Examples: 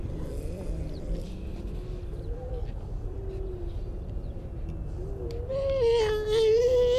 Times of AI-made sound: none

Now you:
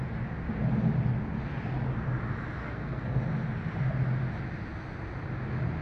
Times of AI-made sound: 2.6-3.2 (codec, SNAC)

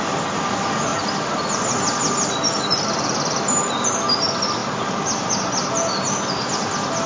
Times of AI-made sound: none

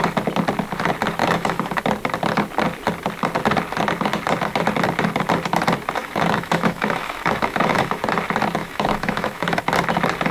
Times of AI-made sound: 1.2-1.8 (autoencoder, DAC-VAE); 6.0-8.0; 8.6-9.6

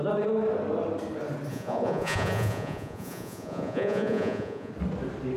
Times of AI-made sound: 1.5-4.7 (vocoder, Vocos)

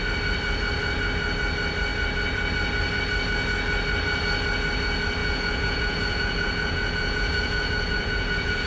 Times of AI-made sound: 5.2-8.7 (vocoder, Vocos)

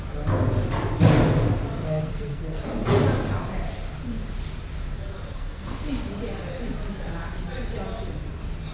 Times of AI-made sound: 1.8-2.6 (codec, SNAC); 5.3-5.9